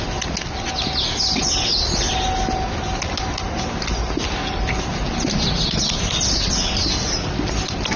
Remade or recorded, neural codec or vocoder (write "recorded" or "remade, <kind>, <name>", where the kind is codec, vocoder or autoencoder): recorded